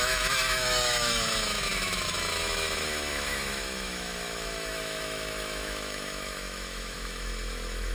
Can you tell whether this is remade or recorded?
remade